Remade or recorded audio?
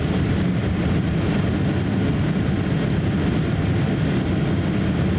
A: recorded